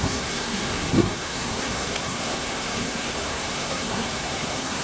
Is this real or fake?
fake